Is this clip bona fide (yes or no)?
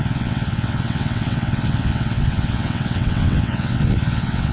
no